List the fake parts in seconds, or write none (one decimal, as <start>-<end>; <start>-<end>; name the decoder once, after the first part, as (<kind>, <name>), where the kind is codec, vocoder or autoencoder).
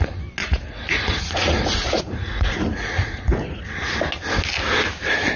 0.4-3.6 (vocoder, Vocos)